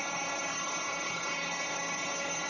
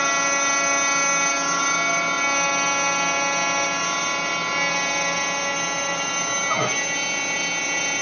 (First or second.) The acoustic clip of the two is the second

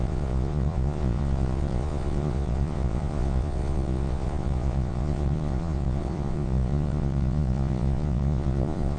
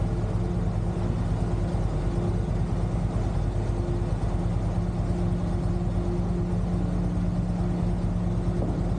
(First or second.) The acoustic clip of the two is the second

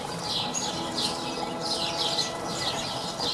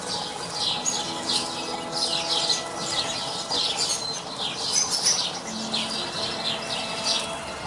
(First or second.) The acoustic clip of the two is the second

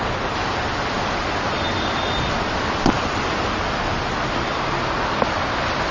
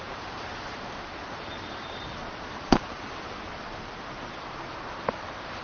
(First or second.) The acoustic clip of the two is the first